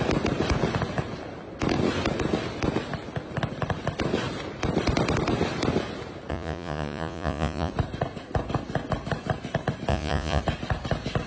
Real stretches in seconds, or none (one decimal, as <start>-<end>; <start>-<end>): 0.0-6.3; 7.7-9.9; 10.4-11.3